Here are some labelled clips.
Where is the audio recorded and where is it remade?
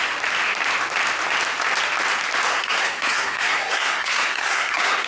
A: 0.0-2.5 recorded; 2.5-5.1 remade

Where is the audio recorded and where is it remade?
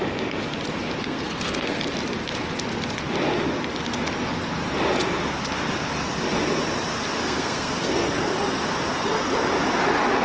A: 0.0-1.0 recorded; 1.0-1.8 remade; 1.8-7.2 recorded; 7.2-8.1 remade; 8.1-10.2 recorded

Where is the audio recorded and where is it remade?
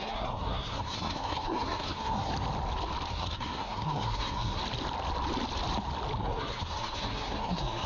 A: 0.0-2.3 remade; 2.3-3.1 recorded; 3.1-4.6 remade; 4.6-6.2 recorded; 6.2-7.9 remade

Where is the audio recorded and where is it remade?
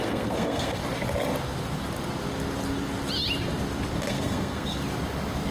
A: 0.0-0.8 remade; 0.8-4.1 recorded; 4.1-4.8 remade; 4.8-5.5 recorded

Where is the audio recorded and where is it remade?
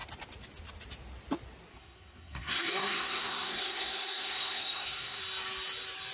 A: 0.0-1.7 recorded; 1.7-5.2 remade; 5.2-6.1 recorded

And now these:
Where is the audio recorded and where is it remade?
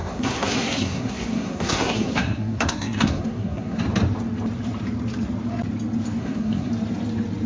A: 0.0-3.8 remade; 3.8-6.2 recorded; 6.2-6.7 remade; 6.7-7.5 recorded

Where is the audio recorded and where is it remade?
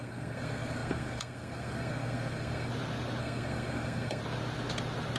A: 0.0-2.7 remade; 2.7-3.2 recorded; 3.2-4.2 remade; 4.2-5.2 recorded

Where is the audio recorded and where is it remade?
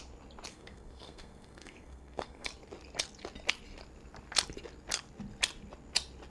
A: 0.0-0.5 recorded; 0.5-2.5 remade; 2.5-6.3 recorded